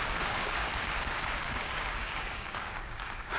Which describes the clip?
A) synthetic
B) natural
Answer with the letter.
A